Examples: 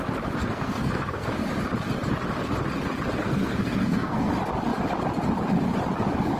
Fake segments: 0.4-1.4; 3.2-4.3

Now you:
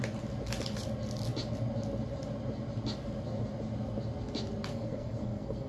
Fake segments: 4.7-5.7

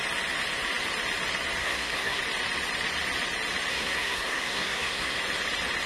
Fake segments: 1.6-2.2; 3.7-5.2

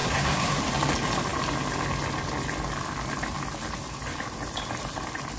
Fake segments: 0.0-0.6